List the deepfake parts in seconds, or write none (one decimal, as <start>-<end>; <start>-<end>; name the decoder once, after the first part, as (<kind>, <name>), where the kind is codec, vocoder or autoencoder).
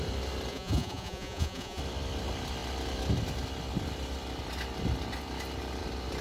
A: 0.5-1.8 (vocoder, Vocos)